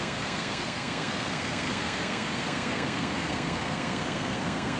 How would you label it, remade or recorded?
remade